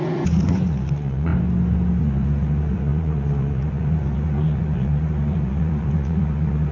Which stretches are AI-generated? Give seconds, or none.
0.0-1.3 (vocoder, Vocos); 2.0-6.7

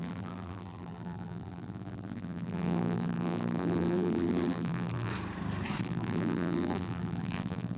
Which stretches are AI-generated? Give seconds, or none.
0.0-5.1 (vocoder, BigVGAN v2); 5.8-7.8

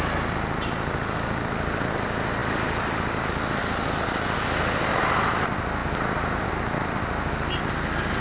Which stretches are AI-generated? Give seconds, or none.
none

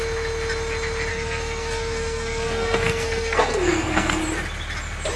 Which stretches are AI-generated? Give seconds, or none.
1.1-4.2 (codec, SNAC)

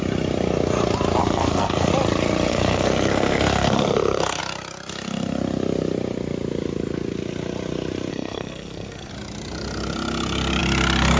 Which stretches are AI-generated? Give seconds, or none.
1.2-1.9 (codec, SNAC); 2.5-4.4; 8.1-9.1